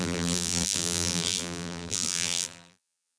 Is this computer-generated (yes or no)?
yes